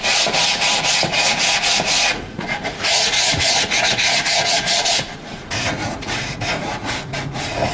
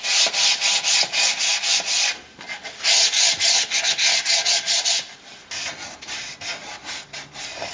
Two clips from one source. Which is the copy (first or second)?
first